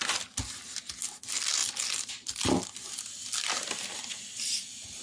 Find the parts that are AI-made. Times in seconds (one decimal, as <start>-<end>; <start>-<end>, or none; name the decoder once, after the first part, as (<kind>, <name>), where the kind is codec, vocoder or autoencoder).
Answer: none